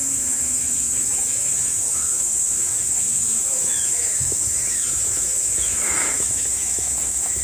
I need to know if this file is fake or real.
fake